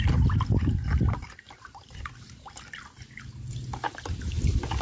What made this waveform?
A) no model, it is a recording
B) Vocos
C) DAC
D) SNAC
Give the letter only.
A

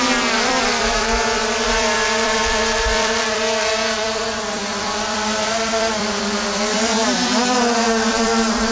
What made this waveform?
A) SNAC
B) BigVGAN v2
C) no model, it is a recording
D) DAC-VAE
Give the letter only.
B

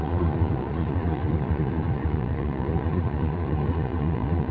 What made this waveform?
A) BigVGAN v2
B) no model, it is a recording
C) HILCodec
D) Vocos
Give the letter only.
D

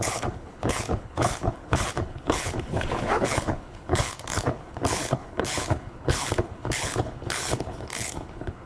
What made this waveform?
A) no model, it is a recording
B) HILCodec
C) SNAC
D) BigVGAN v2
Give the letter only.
B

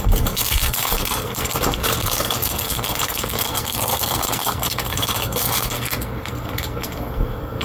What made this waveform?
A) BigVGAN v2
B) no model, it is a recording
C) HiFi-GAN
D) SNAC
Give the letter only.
D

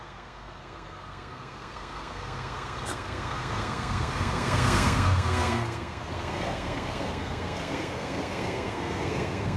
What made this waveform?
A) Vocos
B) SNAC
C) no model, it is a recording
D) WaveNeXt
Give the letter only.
B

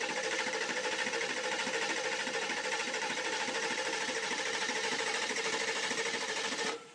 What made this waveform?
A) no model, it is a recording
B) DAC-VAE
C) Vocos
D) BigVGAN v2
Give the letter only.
D